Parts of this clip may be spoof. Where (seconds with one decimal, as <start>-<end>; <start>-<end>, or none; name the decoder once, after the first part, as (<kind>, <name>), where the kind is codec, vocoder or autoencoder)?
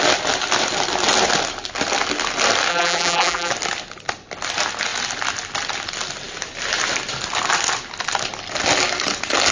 2.7-3.5 (vocoder, BigVGAN v2)